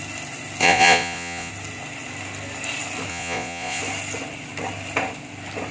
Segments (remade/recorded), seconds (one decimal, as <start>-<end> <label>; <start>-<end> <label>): 0.0-0.6 recorded; 0.6-1.5 remade; 1.5-3.1 recorded; 3.1-3.8 remade; 3.8-5.7 recorded